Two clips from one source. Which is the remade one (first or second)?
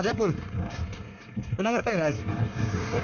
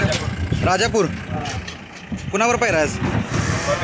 first